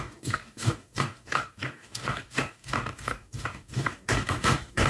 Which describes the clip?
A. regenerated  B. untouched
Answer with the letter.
A